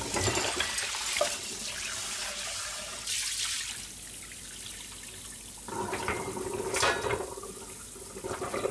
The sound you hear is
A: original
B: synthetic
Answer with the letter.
A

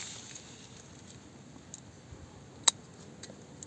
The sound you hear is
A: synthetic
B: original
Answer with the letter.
B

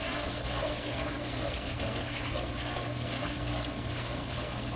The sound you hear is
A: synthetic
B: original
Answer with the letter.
A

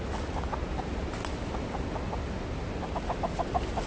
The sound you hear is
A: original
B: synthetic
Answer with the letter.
A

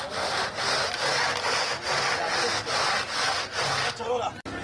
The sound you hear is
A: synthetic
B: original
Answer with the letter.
B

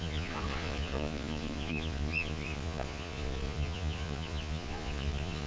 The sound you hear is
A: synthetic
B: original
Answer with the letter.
A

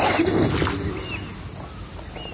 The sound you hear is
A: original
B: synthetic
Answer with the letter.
A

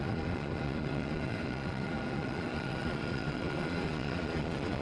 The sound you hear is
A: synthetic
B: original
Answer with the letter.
A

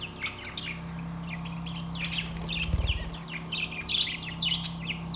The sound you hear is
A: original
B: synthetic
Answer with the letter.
A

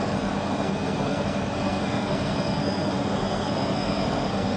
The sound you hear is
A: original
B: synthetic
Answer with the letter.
B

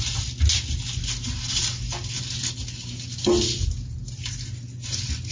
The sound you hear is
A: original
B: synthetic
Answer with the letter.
A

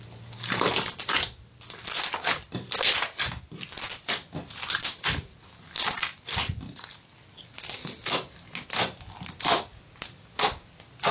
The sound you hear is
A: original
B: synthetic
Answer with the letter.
A